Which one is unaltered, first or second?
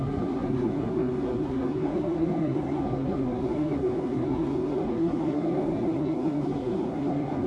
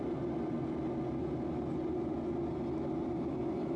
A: second